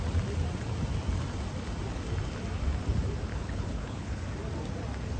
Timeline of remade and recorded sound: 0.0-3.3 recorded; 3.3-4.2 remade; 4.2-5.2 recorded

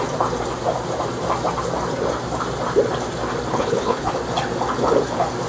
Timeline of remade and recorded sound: 0.0-3.5 recorded; 3.5-4.1 remade; 4.1-5.5 recorded

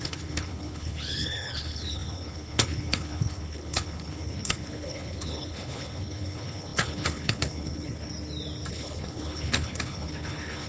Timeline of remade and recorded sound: 0.0-8.1 remade; 8.1-8.7 recorded; 8.7-10.7 remade

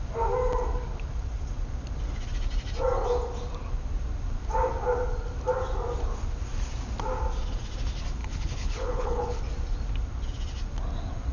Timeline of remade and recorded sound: 0.0-8.2 recorded; 8.2-9.4 remade; 9.4-11.3 recorded

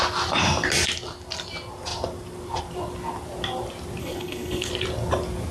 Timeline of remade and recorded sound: 0.0-4.0 recorded; 4.0-4.7 remade; 4.7-5.5 recorded